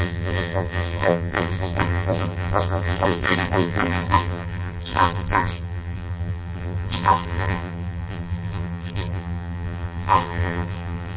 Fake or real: fake